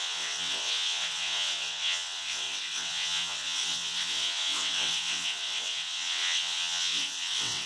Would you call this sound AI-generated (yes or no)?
yes